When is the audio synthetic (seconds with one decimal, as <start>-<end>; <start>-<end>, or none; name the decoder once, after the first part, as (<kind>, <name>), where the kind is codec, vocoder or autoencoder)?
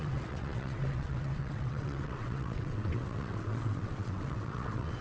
0.0-5.0 (vocoder, WaveNeXt)